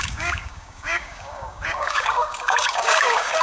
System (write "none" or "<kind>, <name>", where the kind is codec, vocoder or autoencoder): codec, DAC